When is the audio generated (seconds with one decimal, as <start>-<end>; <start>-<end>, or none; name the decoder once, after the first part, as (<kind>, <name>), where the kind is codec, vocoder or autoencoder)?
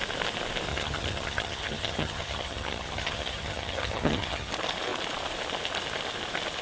0.7-4.5 (vocoder, HiFi-GAN)